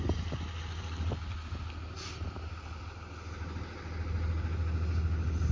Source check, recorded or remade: recorded